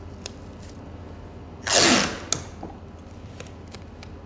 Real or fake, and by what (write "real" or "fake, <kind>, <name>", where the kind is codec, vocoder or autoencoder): real